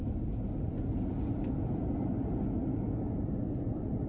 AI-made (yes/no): no